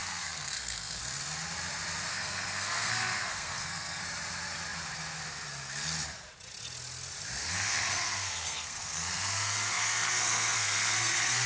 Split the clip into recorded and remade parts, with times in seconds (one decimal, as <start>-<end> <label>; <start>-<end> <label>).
0.0-1.0 remade; 1.0-2.1 recorded; 2.1-4.0 remade; 4.0-7.4 recorded; 7.4-11.5 remade